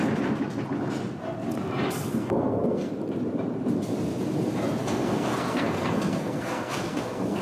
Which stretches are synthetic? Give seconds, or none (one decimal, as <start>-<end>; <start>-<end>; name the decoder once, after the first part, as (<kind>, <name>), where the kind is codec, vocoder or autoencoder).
2.1-2.9 (codec, SNAC); 4.8-7.4